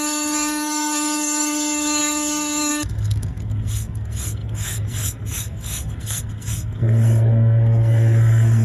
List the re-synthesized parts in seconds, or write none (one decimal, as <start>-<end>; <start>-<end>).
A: 0.0-8.6

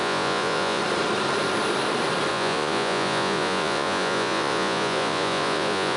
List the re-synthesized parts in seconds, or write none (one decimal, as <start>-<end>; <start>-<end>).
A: 0.0-0.8; 2.3-6.0

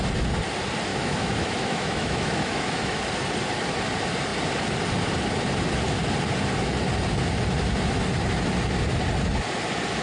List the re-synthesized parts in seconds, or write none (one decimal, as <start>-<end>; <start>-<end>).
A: 0.9-3.0